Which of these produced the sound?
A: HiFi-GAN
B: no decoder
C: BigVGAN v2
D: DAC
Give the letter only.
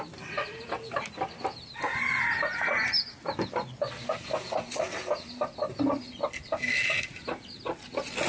B